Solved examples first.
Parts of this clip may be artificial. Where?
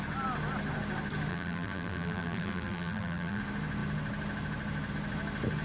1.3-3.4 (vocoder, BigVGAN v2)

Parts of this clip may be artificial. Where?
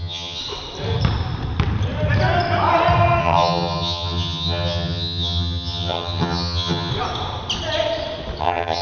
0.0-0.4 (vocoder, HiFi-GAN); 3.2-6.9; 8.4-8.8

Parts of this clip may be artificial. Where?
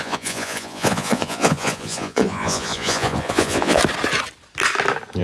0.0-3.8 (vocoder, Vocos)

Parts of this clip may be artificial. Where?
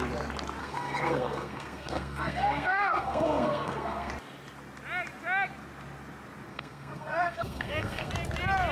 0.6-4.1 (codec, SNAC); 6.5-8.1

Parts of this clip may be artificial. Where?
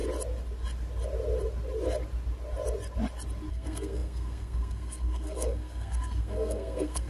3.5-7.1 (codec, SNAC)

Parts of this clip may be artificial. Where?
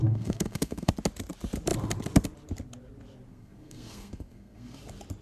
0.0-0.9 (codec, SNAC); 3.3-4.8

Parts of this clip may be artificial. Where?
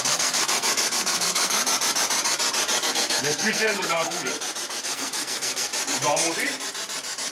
0.0-1.6 (codec, SNAC); 2.9-4.3; 4.8-5.7